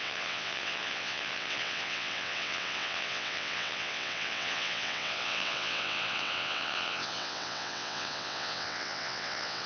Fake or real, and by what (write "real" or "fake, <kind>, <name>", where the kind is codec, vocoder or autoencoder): fake, vocoder, WaveNeXt